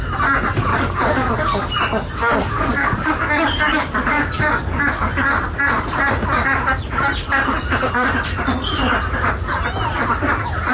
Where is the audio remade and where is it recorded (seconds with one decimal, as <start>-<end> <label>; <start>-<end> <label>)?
0.0-0.7 recorded; 0.7-1.3 remade; 1.3-2.4 recorded; 2.4-5.1 remade; 5.1-10.7 recorded